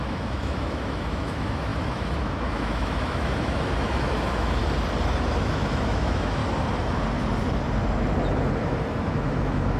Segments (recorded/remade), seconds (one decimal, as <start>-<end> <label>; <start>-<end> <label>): 0.0-4.6 remade; 4.6-5.4 recorded; 5.4-6.4 remade; 6.4-8.6 recorded; 8.6-9.8 remade

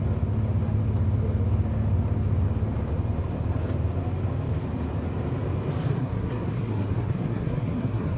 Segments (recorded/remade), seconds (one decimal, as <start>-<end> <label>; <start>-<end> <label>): 0.0-5.9 recorded; 5.9-8.2 remade